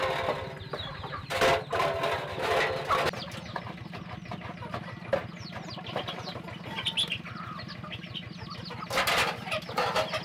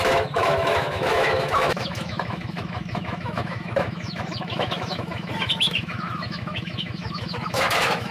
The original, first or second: first